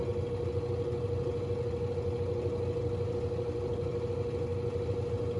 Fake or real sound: real